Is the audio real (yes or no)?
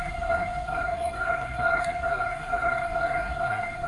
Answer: no